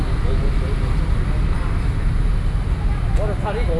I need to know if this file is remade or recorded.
recorded